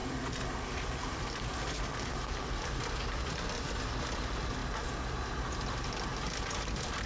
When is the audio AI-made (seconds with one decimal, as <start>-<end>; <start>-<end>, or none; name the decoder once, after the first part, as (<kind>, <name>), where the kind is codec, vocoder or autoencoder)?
none